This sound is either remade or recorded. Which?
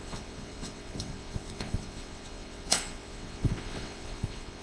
remade